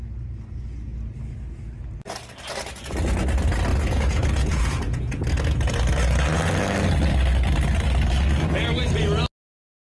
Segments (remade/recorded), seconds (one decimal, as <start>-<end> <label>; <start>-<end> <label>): 0.0-3.7 recorded; 3.7-5.2 remade; 5.2-9.8 recorded